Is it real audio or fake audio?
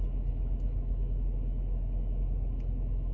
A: real